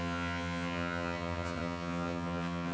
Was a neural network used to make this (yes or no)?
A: yes